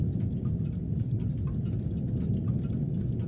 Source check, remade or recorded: recorded